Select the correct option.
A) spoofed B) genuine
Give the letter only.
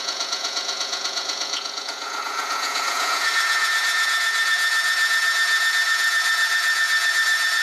A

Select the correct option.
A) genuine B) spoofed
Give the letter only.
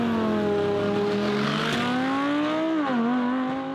A